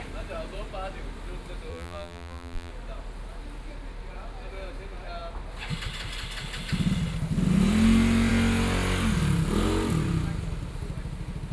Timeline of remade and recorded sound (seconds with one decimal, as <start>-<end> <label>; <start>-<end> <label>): 0.0-1.7 recorded; 1.7-2.7 remade; 2.7-11.5 recorded